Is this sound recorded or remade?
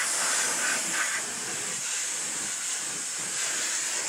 recorded